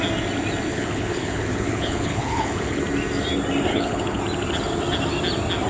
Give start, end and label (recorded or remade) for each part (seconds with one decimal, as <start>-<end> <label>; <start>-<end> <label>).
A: 0.0-0.7 recorded; 0.7-2.8 remade; 2.8-3.7 recorded; 3.7-4.2 remade; 4.2-5.7 recorded